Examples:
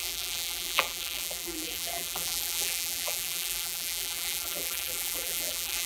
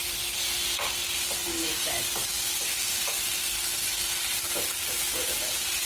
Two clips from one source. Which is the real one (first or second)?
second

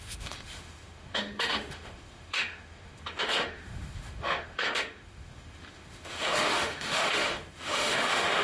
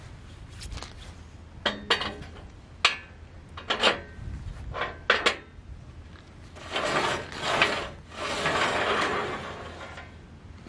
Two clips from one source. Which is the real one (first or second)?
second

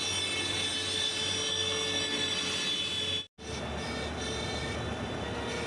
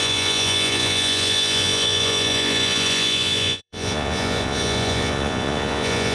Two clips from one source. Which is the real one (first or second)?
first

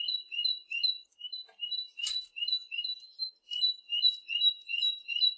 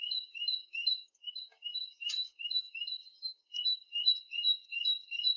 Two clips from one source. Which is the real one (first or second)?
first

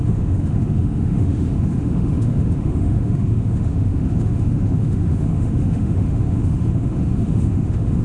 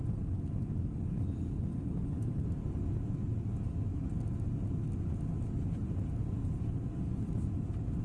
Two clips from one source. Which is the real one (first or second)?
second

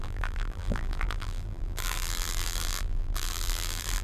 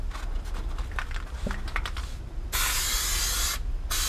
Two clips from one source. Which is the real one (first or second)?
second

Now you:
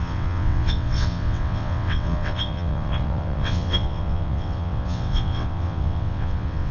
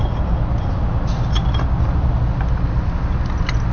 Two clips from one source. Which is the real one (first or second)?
second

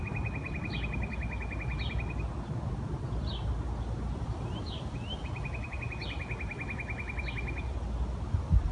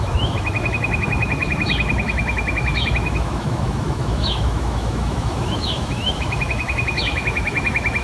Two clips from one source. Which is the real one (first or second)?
first